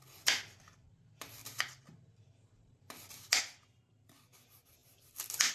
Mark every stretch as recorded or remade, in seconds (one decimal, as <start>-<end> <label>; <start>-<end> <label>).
0.0-5.5 recorded